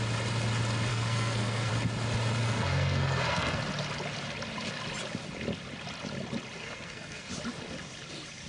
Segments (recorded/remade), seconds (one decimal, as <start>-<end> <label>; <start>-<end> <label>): 0.0-0.9 recorded; 0.9-1.7 remade; 1.7-2.4 recorded; 2.4-3.6 remade; 3.6-6.6 recorded; 6.6-7.3 remade; 7.3-8.5 recorded